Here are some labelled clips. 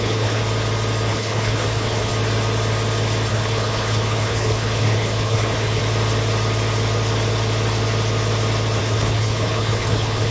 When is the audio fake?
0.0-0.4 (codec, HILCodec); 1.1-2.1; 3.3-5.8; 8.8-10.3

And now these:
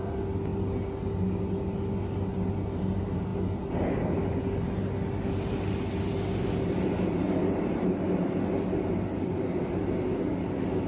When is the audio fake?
none